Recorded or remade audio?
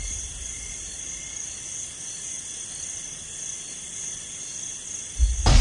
recorded